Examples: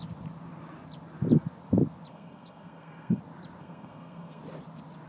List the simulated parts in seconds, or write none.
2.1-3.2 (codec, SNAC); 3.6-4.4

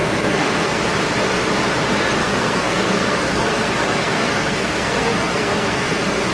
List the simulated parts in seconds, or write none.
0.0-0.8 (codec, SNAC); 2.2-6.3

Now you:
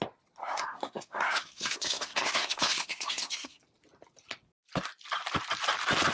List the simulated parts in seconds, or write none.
0.4-3.6 (codec, SNAC)

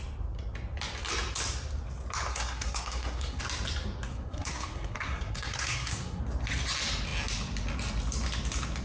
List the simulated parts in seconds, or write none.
2.3-3.4 (codec, SNAC); 4.1-6.2

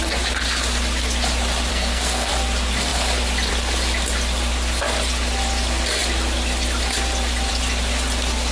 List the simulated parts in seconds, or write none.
1.7-2.3 (codec, SNAC)

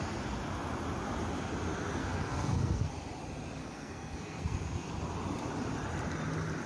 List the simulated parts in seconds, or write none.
2.0-2.9 (codec, SNAC); 3.6-4.9

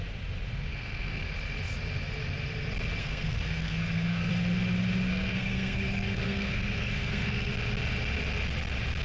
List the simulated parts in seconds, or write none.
0.7-1.2 (codec, SNAC); 3.0-4.3; 5.1-7.5